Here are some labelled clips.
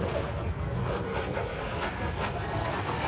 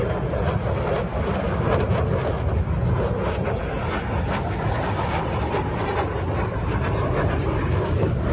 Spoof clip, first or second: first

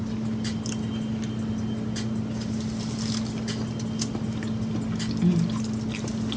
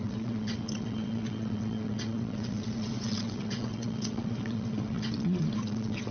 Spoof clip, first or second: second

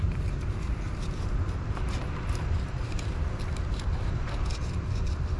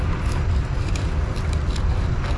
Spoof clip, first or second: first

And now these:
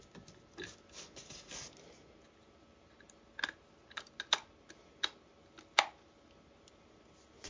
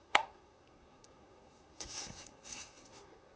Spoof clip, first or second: second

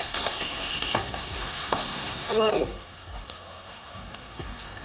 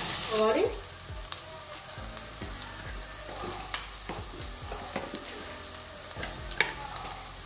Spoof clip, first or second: first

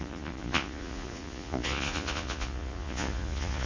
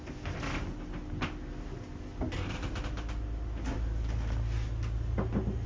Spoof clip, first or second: first